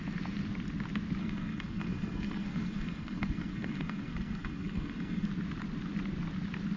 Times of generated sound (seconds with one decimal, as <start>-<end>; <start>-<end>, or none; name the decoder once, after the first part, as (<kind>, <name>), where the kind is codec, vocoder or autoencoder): 1.2-5.3 (codec, SNAC)